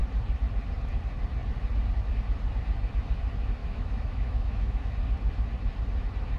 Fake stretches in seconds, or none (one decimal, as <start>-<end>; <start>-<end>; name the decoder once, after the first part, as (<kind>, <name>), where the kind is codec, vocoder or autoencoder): 3.6-4.9 (autoencoder, DAC-VAE)